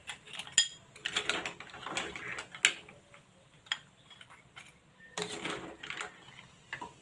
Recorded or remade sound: recorded